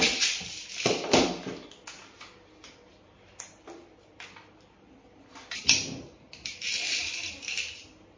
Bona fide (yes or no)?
no